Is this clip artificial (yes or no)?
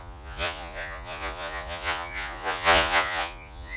yes